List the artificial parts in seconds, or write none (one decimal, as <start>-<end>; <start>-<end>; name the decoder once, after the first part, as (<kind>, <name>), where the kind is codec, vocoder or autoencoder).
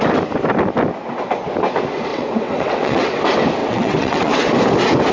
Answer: 2.1-3.2 (vocoder, WaveNeXt); 3.6-4.5